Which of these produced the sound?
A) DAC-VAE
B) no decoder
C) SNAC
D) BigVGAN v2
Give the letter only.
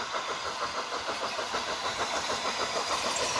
D